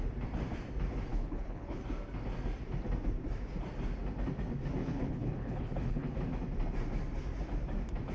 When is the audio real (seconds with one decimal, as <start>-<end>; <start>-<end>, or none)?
0.0-1.1; 1.8-4.8; 6.2-8.1